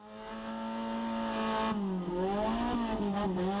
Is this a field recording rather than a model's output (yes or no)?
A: yes